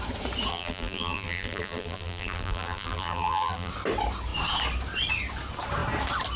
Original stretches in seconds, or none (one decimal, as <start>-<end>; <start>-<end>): 0.0-0.5; 3.7-6.4